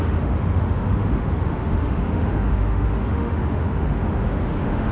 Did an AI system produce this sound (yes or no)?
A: yes